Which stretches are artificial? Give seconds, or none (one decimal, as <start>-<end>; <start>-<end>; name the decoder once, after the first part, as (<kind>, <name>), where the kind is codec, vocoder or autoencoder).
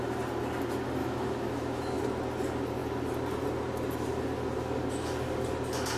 1.0-2.0 (autoencoder, DAC-VAE)